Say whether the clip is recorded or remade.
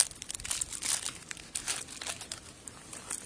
recorded